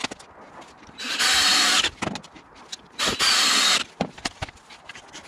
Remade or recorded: recorded